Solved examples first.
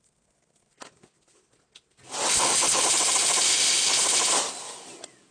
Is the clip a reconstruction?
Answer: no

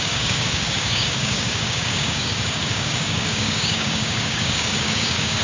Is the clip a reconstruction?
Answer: yes